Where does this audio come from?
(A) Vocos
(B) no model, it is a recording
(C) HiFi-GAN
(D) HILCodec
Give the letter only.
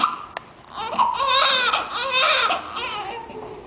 B